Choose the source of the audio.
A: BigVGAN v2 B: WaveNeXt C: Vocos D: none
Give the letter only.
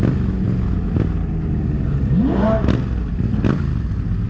D